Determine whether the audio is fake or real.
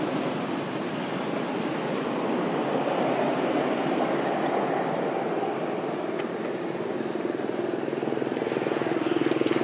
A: real